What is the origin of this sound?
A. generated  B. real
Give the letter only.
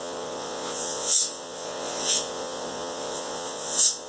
A